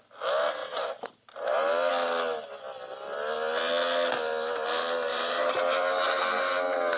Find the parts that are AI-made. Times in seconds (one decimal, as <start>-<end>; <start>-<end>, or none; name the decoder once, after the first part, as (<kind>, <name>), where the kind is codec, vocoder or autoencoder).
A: 0.6-1.9 (vocoder, BigVGAN v2); 5.1-6.2